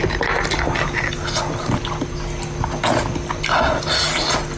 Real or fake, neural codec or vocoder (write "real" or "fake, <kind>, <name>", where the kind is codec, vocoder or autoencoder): real